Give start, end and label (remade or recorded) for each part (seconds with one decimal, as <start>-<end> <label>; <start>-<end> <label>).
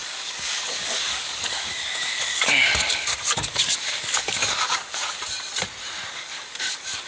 0.0-5.0 remade; 5.0-6.1 recorded; 6.1-7.1 remade